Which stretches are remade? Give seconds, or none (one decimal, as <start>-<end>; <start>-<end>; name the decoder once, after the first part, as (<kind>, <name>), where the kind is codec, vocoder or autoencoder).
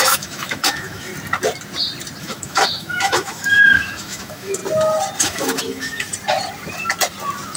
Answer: 0.0-1.1 (autoencoder, DAC-VAE); 2.2-4.6; 5.2-6.1